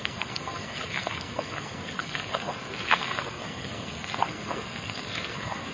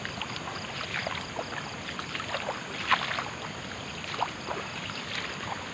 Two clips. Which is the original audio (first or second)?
second